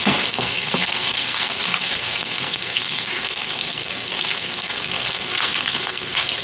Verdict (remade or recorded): remade